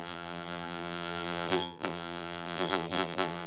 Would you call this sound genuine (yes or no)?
no